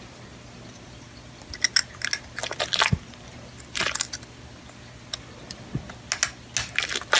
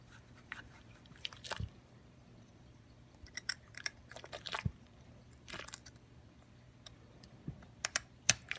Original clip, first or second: first